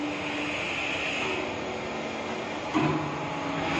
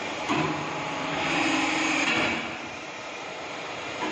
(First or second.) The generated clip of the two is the second